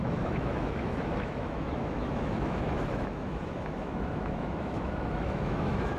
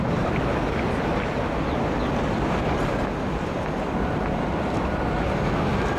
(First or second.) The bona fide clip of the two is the second